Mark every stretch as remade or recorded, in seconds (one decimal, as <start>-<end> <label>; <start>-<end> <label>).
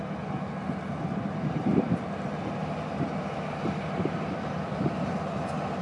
0.0-5.8 recorded